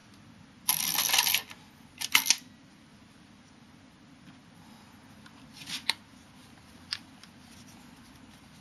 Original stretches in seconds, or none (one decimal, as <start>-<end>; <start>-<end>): 0.0-8.6